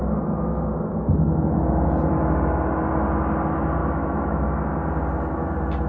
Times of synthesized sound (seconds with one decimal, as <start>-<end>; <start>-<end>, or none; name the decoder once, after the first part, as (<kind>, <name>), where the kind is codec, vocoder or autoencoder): 3.8-4.4 (autoencoder, DAC-VAE)

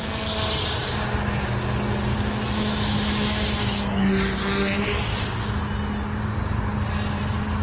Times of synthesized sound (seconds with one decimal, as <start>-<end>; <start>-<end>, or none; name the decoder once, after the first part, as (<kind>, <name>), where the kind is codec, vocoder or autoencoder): 2.1-3.8 (autoencoder, DAC-VAE)

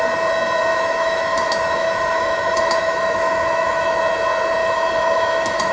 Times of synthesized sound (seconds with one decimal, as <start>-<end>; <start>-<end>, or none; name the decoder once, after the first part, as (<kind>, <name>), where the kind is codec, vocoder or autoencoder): 0.7-4.0 (autoencoder, DAC-VAE); 4.6-5.7

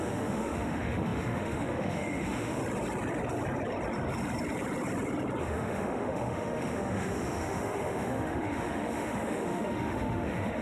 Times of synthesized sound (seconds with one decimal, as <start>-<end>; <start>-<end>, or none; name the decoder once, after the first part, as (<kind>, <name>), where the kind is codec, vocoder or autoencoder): 0.0-2.6 (autoencoder, DAC-VAE); 5.4-10.6

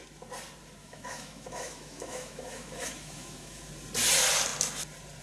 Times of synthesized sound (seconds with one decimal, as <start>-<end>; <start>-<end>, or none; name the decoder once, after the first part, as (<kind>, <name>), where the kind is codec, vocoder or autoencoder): 0.8-3.7 (autoencoder, DAC-VAE)

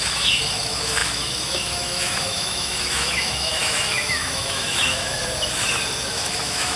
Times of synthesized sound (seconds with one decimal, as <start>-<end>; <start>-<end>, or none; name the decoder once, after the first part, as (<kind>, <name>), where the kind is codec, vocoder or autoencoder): 0.0-5.2 (autoencoder, DAC-VAE); 6.1-6.8

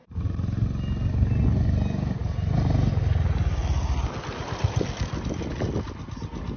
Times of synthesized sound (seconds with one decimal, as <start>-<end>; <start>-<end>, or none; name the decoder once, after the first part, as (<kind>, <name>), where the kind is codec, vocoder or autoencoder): none